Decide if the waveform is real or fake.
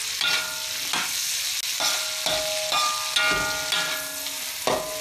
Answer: real